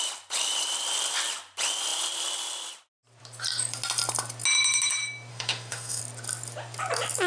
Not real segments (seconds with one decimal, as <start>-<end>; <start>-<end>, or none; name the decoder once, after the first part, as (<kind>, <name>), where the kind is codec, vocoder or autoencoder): 5.3-6.0 (autoencoder, DAC-VAE)